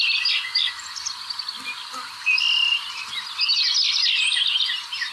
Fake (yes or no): no